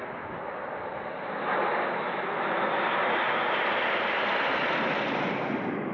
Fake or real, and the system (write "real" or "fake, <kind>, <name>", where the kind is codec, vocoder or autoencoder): real